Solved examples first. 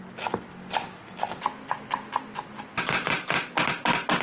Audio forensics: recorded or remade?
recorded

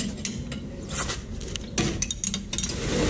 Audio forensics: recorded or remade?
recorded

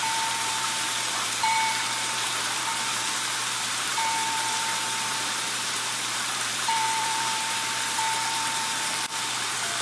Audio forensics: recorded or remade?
remade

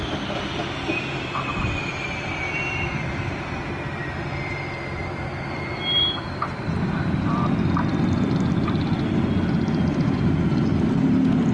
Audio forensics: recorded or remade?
remade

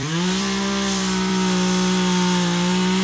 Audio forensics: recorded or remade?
remade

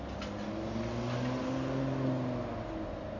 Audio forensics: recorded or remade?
recorded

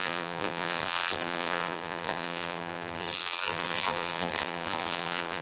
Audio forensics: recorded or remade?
remade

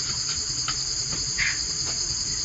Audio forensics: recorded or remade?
recorded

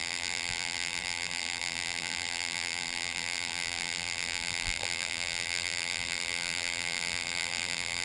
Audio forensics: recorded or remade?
remade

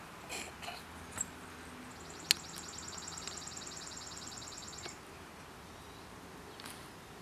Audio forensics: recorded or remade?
recorded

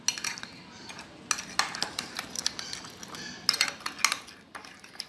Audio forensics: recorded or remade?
recorded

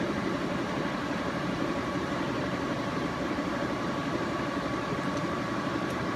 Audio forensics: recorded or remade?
remade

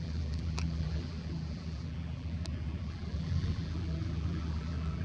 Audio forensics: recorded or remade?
remade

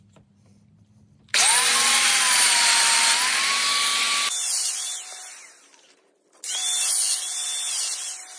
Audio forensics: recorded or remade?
recorded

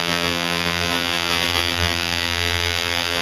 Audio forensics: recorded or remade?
remade